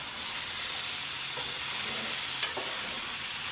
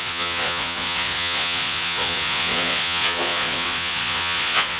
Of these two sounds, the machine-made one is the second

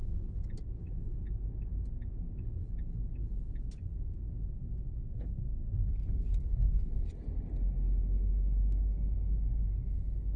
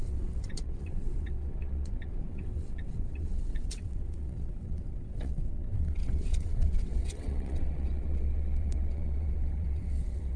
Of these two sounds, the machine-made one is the second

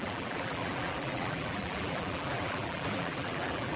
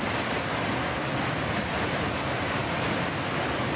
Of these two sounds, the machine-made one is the first